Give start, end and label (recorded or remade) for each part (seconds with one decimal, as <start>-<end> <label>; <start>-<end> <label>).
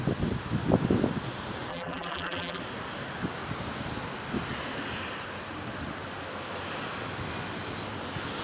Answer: 0.0-1.7 recorded; 1.7-2.6 remade; 2.6-8.4 recorded